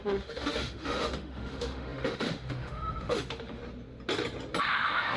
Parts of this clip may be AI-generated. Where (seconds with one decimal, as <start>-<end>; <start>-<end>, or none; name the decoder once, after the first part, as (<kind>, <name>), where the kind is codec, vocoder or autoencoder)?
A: 0.0-3.6 (autoencoder, DAC-VAE); 4.6-5.2